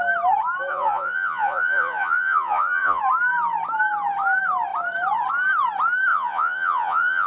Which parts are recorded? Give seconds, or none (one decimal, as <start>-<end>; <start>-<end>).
0.0-0.7; 3.0-6.1